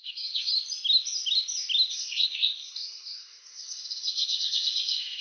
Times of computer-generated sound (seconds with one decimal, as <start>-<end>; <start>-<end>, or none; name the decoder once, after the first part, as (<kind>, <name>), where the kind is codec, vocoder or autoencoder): 0.0-0.5 (codec, SNAC); 1.9-5.2